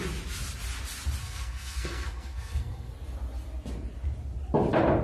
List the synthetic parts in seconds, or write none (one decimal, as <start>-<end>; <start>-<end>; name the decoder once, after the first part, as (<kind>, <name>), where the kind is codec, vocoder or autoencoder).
1.2-2.9 (codec, SNAC)